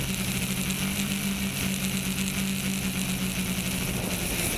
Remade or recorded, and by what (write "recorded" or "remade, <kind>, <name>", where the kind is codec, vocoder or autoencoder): recorded